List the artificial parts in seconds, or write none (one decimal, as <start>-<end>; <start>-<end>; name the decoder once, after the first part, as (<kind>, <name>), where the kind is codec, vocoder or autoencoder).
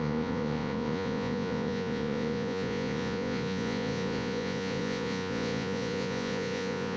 0.0-7.0 (vocoder, Vocos)